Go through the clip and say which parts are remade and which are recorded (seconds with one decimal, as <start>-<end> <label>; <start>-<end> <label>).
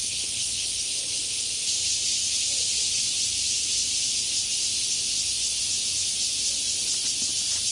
0.0-0.8 remade; 0.8-7.7 recorded